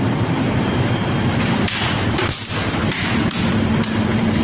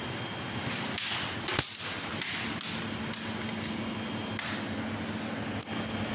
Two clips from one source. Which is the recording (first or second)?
second